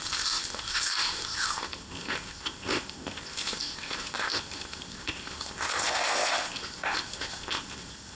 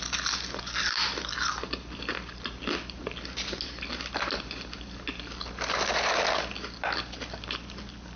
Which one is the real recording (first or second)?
second